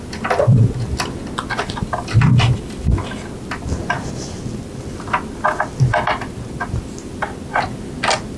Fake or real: real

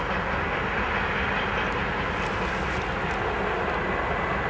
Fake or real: real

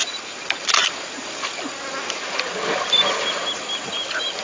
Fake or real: real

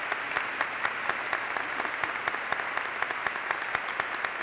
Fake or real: real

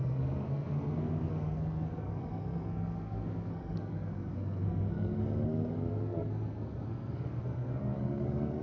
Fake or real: fake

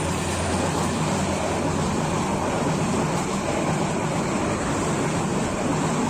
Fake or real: real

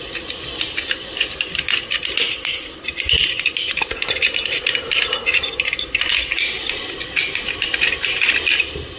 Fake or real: real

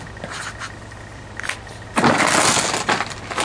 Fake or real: real